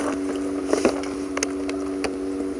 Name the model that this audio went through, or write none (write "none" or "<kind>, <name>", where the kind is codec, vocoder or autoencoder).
none